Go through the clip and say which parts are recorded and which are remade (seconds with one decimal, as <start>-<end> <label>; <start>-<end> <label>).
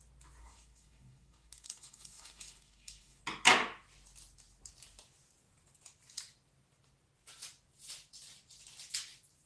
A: 0.0-0.4 recorded; 0.4-3.2 remade; 3.2-9.5 recorded